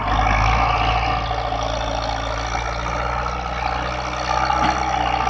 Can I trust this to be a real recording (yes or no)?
yes